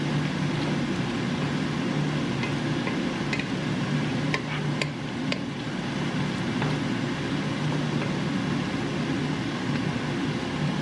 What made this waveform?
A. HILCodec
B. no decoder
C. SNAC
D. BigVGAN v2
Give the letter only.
B